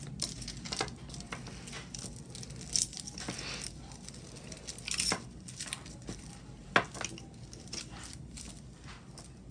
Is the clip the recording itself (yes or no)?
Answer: yes